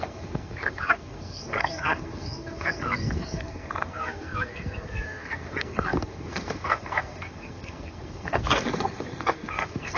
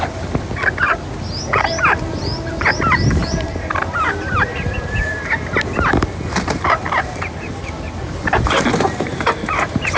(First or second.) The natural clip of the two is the second